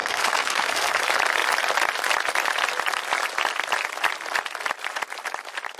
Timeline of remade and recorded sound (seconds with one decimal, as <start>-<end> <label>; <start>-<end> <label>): 0.0-1.0 remade; 1.0-5.8 recorded